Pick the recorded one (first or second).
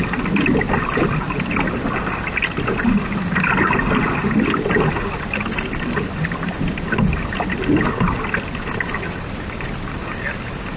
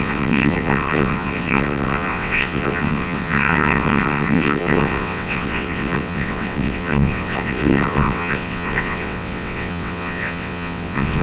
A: first